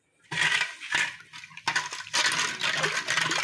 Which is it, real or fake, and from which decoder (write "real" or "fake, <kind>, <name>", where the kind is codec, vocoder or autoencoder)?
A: real